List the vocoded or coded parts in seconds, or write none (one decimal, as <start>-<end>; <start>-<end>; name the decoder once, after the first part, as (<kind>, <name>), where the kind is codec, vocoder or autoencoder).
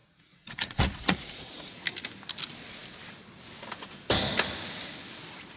0.0-1.7 (vocoder, Vocos)